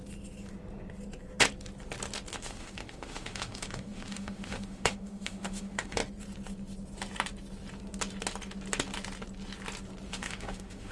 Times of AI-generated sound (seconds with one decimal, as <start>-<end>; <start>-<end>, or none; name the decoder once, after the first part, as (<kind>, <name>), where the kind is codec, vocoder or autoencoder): 2.3-6.0 (autoencoder, DAC-VAE); 10.1-10.9